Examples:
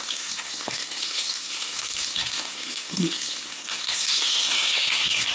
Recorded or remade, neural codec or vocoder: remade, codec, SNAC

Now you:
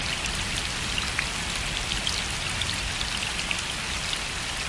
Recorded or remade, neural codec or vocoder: recorded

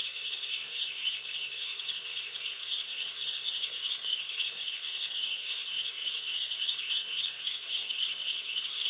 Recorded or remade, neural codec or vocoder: remade, codec, SNAC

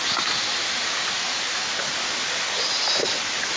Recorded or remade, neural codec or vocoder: recorded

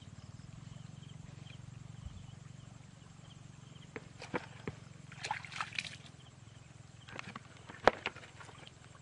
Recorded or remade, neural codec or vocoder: recorded